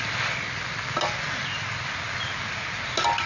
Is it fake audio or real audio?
real